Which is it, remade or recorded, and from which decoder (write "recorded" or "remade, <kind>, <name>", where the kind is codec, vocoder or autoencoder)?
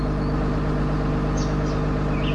recorded